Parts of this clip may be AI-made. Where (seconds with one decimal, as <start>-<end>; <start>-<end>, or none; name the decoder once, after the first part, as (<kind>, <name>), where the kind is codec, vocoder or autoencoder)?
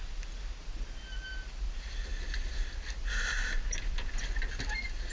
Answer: none